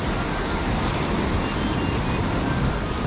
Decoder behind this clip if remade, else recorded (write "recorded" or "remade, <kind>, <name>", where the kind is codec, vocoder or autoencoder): recorded